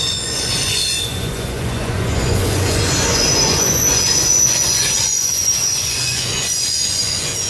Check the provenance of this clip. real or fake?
fake